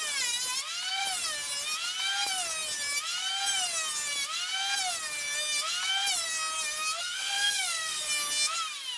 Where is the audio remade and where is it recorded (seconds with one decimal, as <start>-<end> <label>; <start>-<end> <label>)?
0.0-7.0 recorded; 7.0-8.0 remade; 8.0-9.0 recorded